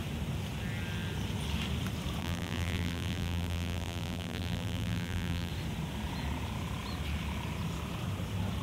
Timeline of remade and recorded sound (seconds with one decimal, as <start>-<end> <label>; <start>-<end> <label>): 0.0-2.2 recorded; 2.2-5.5 remade; 5.5-8.6 recorded